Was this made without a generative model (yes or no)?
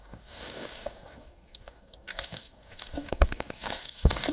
no